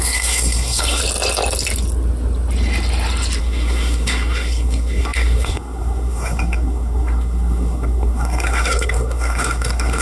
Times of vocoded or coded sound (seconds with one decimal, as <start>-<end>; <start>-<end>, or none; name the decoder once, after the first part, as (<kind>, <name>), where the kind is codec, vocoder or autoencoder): 0.0-1.0 (codec, SNAC); 3.4-10.0